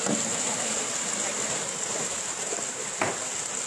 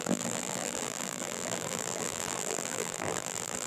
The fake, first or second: second